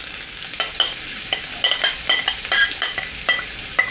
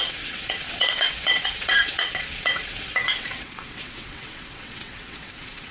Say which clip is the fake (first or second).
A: second